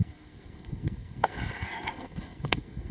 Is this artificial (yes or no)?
yes